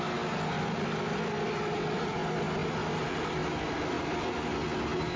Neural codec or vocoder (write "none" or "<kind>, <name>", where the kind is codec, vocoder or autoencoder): none